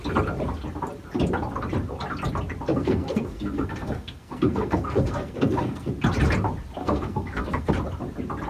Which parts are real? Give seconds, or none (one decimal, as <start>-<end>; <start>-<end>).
0.0-2.7; 5.9-6.8; 7.7-8.5